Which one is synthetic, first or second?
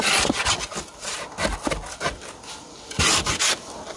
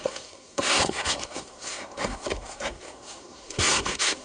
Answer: second